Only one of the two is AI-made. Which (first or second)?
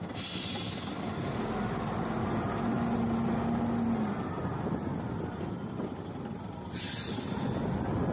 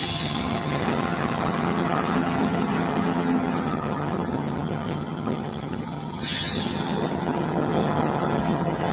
second